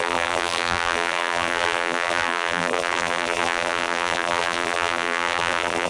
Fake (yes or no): yes